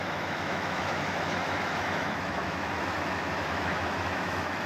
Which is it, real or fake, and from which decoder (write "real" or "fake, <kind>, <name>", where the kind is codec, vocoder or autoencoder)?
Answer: fake, autoencoder, DAC-VAE